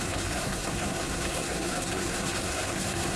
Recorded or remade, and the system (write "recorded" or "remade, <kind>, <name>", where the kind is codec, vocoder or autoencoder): remade, codec, SNAC